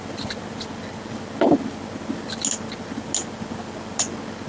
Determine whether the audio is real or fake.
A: real